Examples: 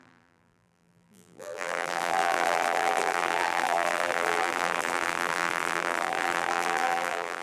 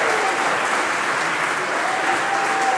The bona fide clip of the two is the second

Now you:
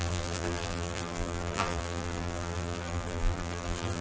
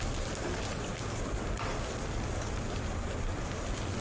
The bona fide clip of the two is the second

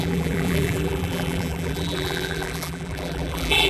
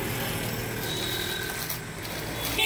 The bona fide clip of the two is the second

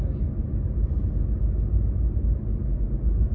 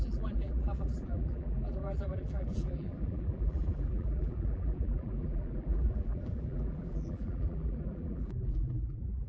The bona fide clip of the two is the first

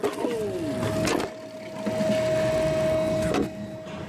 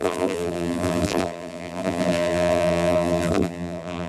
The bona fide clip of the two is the first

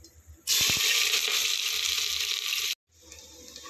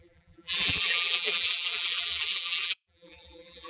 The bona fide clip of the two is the first